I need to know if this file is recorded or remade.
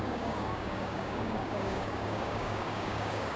remade